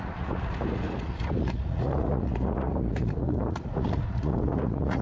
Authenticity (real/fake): fake